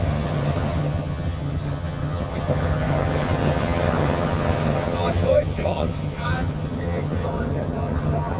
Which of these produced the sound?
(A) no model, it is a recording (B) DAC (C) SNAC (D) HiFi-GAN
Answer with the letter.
D